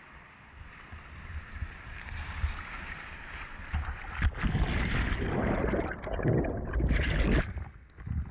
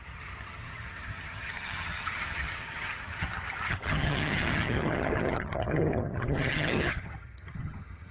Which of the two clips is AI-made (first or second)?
second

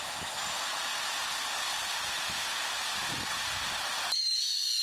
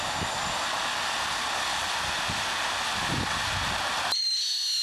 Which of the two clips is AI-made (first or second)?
first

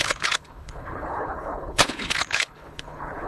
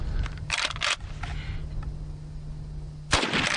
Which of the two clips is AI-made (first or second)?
first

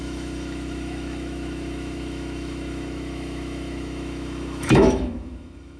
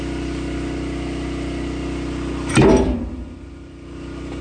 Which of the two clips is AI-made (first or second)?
first